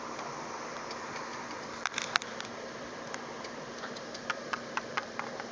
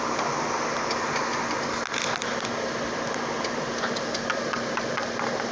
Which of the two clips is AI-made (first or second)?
first